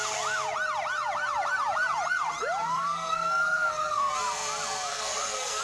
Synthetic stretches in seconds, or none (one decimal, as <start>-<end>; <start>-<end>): 2.6-4.1; 4.9-5.6